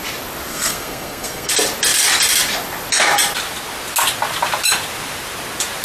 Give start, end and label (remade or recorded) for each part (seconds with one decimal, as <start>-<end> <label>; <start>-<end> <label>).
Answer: 0.0-0.5 recorded; 0.5-1.5 remade; 1.5-5.8 recorded